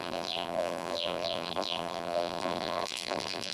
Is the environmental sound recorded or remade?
remade